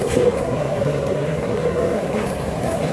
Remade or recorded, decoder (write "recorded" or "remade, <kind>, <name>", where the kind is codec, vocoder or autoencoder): remade, codec, SNAC